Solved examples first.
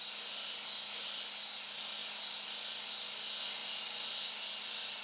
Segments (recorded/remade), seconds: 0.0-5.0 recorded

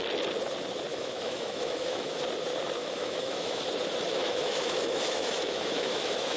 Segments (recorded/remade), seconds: 0.0-0.9 recorded; 0.9-2.2 remade; 2.2-2.8 recorded; 2.8-3.6 remade; 3.6-4.1 recorded; 4.1-6.4 remade

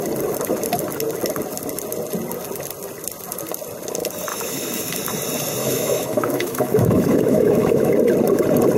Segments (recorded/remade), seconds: 0.0-4.3 recorded; 4.3-4.9 remade; 4.9-5.6 recorded; 5.6-7.9 remade; 7.9-8.8 recorded

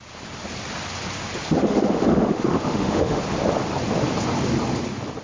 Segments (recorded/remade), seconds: 0.0-1.6 recorded; 1.6-3.2 remade; 3.2-5.2 recorded

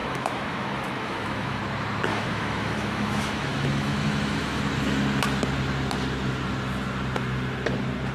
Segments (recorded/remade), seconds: 0.0-1.6 remade; 1.6-2.1 recorded; 2.1-4.6 remade; 4.6-8.1 recorded